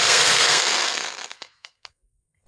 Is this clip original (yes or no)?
no